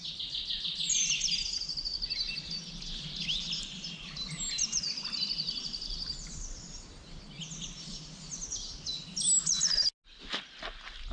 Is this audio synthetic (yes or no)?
no